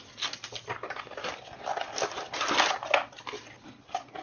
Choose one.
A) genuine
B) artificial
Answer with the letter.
A